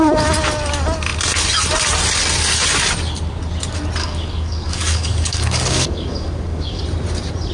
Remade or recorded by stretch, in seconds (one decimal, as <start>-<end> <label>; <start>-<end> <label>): 0.0-4.0 recorded; 4.0-6.8 remade; 6.8-7.5 recorded